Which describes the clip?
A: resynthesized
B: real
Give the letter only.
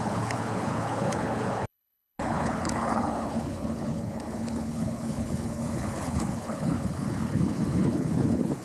A